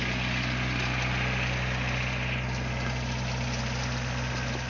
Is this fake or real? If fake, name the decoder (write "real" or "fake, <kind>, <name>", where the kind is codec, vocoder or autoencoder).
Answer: real